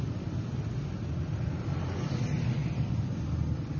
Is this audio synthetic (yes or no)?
no